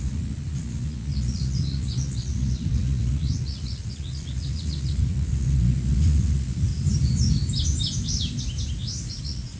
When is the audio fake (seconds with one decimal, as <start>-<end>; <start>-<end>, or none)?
0.0-6.7; 9.2-9.6